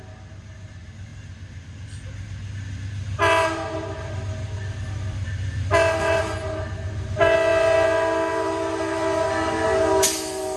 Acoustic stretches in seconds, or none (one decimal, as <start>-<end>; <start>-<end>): 0.0-10.6